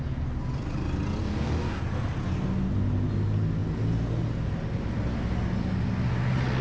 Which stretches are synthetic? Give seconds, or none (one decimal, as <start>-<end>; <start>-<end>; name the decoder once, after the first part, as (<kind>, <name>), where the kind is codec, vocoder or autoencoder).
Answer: 1.2-1.8 (codec, DAC)